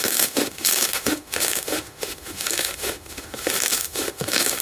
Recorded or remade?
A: remade